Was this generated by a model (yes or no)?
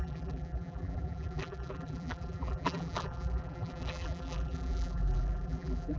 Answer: yes